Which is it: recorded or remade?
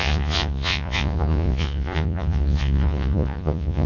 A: remade